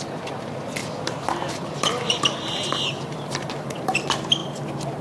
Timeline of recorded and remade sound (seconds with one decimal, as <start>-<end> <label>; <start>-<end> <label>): 0.0-0.8 recorded; 0.8-3.8 remade; 3.8-5.0 recorded